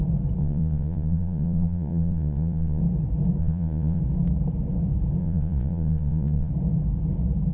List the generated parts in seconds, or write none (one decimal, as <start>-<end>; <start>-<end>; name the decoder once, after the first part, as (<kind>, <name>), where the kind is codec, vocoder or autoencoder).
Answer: 0.4-2.8 (vocoder, Vocos); 3.4-4.0; 5.2-6.5